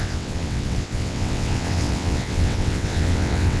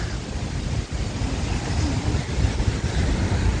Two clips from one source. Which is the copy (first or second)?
first